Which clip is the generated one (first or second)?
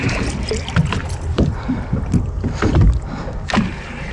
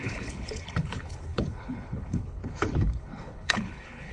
second